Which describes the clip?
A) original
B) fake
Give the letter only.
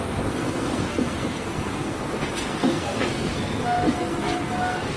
B